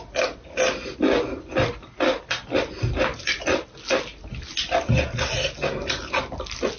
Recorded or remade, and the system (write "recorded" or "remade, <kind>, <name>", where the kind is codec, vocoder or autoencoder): recorded